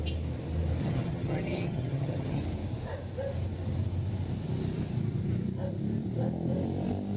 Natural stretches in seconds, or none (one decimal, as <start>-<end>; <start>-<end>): 0.0-0.8; 2.4-7.2

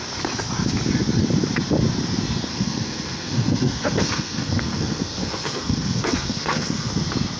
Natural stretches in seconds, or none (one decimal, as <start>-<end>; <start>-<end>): 0.0-2.5; 6.9-7.4

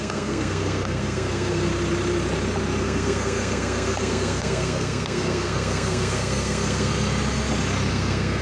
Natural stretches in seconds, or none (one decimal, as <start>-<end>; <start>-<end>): 1.7-2.8; 6.9-7.9

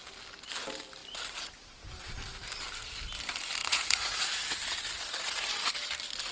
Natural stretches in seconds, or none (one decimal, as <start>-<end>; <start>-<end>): 0.0-3.6; 4.6-6.3

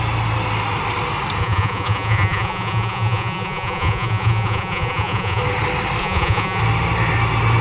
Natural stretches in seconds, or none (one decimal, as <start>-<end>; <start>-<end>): 0.0-1.4; 5.4-6.0; 6.6-7.6

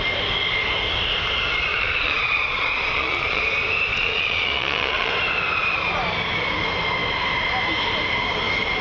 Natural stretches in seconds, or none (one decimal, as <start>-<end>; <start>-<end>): 0.0-1.7; 3.4-3.9; 5.1-8.8

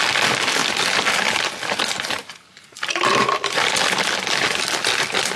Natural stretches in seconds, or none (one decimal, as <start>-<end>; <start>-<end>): 0.0-5.4